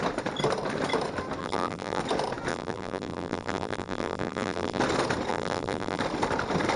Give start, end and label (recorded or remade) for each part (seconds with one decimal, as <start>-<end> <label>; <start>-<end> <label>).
0.0-1.4 recorded; 1.4-2.0 remade; 2.0-2.5 recorded; 2.5-4.8 remade; 4.8-5.3 recorded; 5.3-6.0 remade; 6.0-6.8 recorded